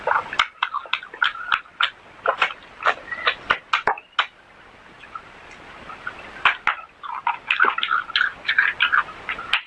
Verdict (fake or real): real